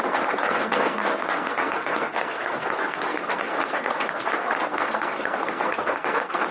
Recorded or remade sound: remade